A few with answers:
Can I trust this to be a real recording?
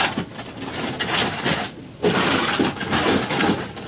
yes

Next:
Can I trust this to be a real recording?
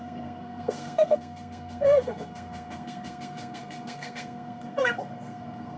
no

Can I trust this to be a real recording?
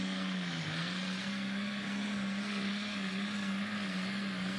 no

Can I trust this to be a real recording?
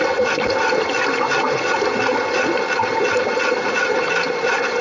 yes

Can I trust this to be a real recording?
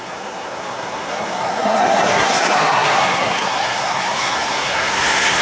no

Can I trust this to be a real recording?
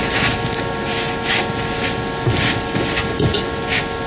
yes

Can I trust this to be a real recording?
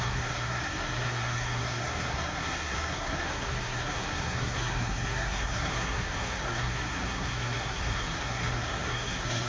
no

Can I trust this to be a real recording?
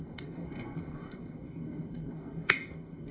no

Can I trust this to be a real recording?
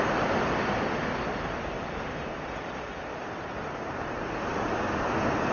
yes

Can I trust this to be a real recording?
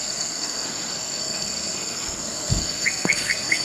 no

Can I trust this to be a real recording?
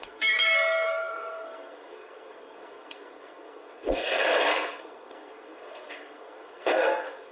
no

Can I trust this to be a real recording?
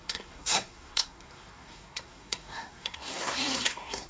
no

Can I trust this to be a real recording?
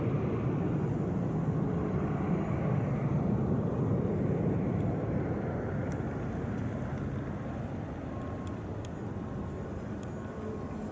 yes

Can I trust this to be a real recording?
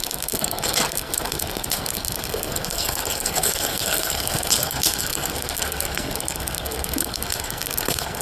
no